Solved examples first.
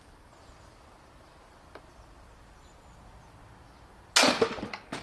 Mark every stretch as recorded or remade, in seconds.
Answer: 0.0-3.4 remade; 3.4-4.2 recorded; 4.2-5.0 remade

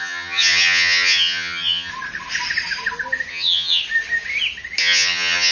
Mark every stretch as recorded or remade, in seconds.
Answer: 0.0-1.9 remade; 1.9-3.3 recorded; 3.3-3.8 remade; 3.8-4.8 recorded; 4.8-5.5 remade